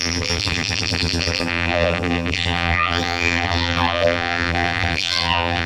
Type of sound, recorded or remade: remade